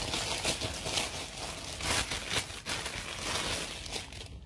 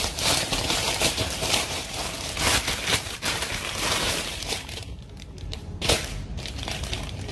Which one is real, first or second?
first